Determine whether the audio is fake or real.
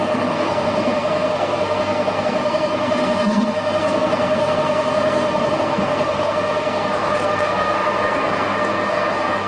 fake